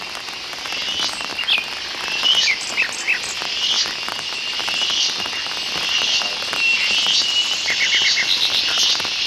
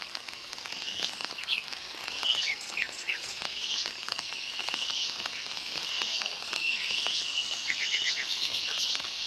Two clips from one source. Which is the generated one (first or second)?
second